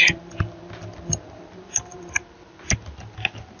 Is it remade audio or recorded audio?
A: recorded